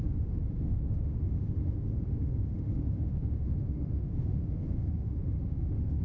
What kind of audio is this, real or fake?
fake